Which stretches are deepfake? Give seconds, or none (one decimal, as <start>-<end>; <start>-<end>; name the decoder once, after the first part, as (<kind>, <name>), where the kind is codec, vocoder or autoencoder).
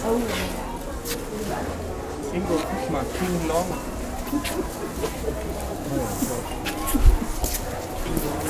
none